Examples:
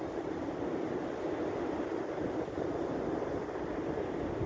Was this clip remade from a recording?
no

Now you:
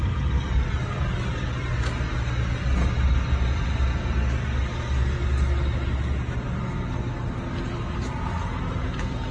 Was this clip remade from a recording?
no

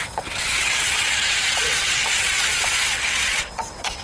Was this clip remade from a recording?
yes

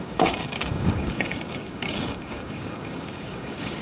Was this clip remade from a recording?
yes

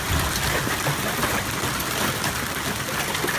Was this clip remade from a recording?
no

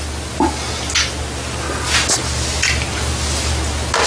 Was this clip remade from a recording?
no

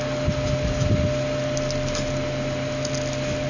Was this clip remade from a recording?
no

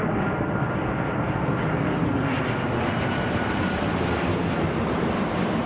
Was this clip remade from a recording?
no